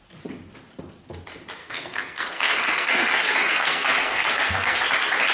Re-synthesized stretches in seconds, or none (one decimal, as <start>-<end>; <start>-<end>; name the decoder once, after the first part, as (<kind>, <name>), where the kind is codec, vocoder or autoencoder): 1.6-4.8 (codec, SNAC)